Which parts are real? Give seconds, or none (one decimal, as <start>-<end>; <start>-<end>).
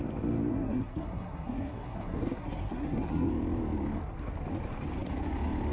0.0-0.5; 3.3-5.7